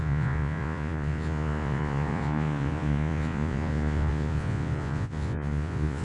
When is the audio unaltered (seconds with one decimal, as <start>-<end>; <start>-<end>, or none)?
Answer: none